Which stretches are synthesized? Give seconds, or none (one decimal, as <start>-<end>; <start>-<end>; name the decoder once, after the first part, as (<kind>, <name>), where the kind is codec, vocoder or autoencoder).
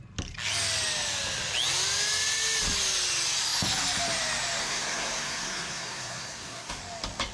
4.6-6.8 (codec, SNAC)